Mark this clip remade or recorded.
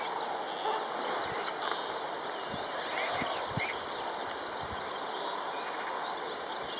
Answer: recorded